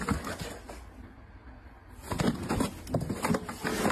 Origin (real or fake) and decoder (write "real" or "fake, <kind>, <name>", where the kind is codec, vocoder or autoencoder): real